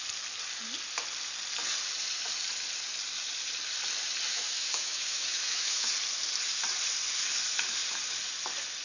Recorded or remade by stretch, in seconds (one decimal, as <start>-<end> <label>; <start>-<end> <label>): 0.0-4.3 recorded; 4.3-5.9 remade; 5.9-8.8 recorded